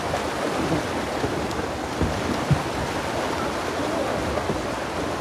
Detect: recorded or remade recorded